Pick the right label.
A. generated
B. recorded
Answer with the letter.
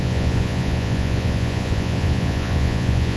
A